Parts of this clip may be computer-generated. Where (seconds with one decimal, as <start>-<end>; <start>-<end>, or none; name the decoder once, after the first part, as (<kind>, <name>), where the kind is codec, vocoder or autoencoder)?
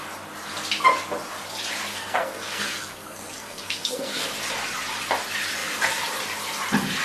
1.9-4.3 (codec, SNAC)